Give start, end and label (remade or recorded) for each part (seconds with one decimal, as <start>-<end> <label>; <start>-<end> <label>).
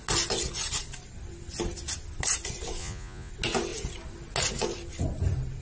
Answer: 0.0-2.8 recorded; 2.8-3.3 remade; 3.3-5.6 recorded